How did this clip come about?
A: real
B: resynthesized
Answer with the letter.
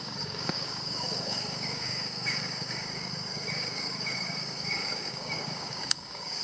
B